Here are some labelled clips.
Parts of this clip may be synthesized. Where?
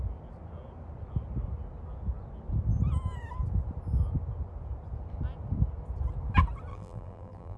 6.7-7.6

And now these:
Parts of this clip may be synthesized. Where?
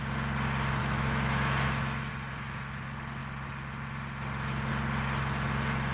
0.8-2.1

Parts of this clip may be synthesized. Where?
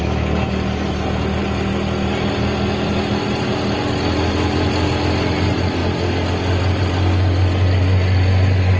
none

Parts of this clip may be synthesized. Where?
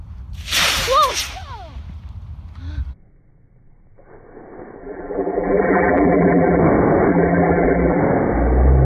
4.8-6.6; 7.1-8.0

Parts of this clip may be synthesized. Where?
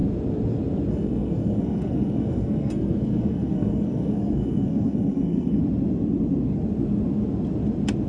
0.9-5.6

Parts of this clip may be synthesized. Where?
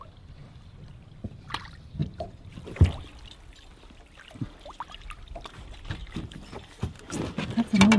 2.0-2.9; 6.0-7.2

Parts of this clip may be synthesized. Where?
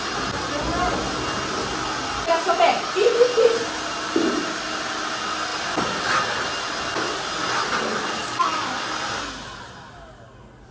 7.9-8.9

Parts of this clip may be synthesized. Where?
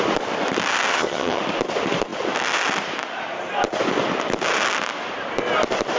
0.9-1.4